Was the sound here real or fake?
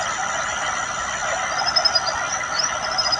real